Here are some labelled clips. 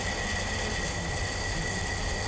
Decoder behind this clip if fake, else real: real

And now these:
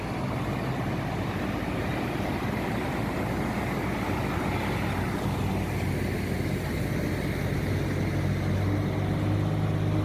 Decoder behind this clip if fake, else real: real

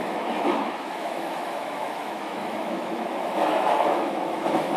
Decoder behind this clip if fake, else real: fake, autoencoder, DAC-VAE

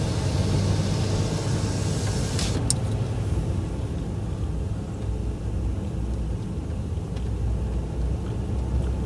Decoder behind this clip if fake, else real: real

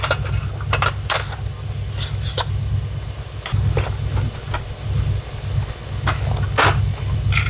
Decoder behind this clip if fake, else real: real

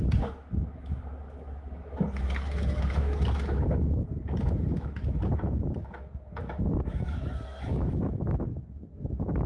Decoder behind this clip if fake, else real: fake, autoencoder, DAC-VAE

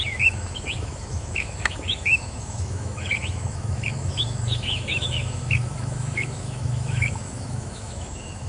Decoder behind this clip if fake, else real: fake, autoencoder, DAC-VAE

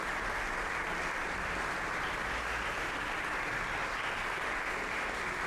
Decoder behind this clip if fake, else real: real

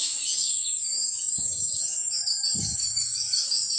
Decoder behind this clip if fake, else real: fake, autoencoder, DAC-VAE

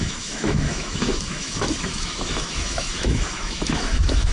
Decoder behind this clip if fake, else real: fake, autoencoder, DAC-VAE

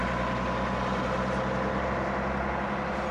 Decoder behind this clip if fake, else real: real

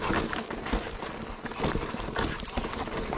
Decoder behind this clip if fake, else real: real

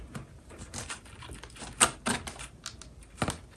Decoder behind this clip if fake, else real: real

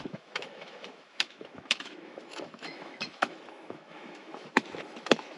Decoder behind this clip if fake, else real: fake, autoencoder, DAC-VAE